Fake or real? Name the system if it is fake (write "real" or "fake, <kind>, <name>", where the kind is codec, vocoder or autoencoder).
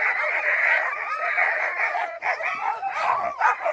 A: fake, vocoder, Vocos